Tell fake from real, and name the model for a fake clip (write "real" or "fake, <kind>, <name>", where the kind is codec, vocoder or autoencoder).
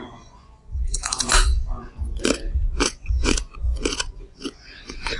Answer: fake, vocoder, Vocos